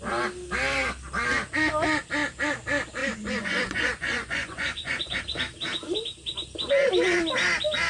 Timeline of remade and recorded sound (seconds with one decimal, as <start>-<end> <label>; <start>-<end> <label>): 0.0-3.0 recorded; 3.0-5.2 remade; 5.2-7.9 recorded